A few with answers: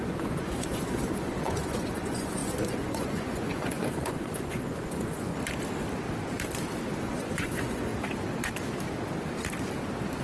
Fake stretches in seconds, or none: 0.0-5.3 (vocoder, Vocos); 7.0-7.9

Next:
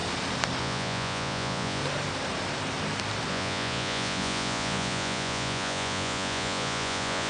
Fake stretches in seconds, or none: 0.6-1.8 (vocoder, Vocos); 3.3-7.3

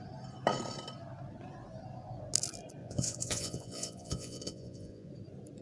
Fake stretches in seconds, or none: 2.8-5.1 (vocoder, Vocos)

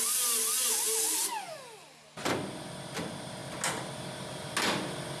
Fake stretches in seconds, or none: none

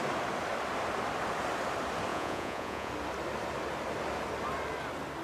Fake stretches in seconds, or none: 2.1-2.9 (vocoder, Vocos)

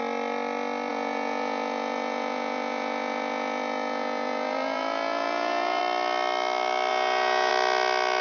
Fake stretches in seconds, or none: 0.9-5.8 (vocoder, Vocos); 6.9-7.5

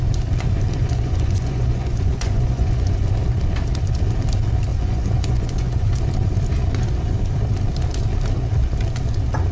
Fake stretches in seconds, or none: 0.8-3.0 (vocoder, Vocos); 4.7-6.0

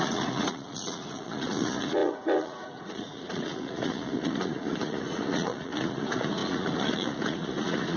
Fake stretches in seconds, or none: 0.0-8.0 (vocoder, Vocos)